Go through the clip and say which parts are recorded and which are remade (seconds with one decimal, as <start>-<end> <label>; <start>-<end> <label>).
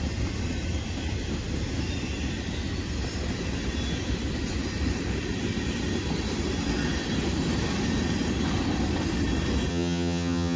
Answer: 0.0-9.7 recorded; 9.7-10.6 remade